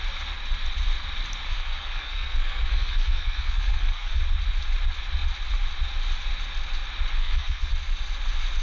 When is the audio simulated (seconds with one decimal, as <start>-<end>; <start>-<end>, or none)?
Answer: 1.5-4.2; 7.2-7.7